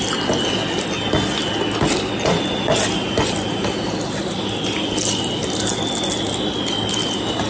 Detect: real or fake real